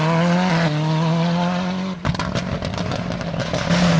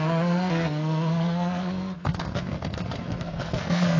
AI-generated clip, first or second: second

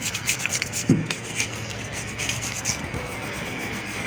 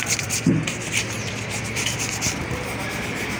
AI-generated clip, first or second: first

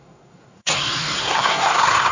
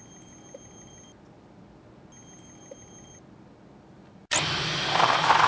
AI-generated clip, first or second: first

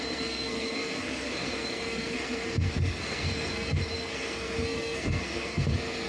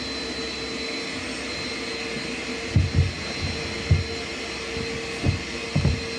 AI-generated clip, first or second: first